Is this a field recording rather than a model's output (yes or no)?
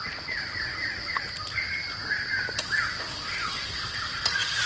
yes